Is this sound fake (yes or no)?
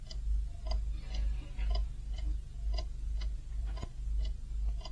no